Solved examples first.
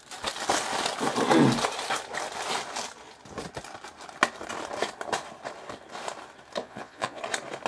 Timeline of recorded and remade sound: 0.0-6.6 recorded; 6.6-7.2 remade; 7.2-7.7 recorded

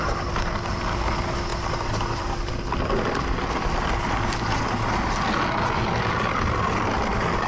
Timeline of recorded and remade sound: 0.0-7.5 recorded

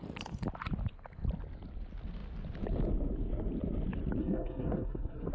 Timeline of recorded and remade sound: 0.0-4.2 recorded; 4.2-5.3 remade

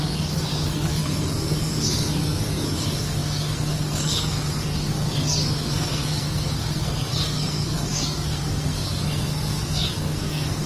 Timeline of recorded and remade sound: 0.0-10.7 remade

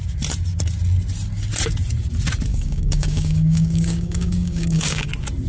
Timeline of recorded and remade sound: 0.0-2.5 recorded; 2.5-5.1 remade; 5.1-5.5 recorded